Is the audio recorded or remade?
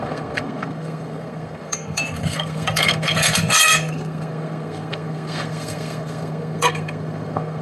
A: remade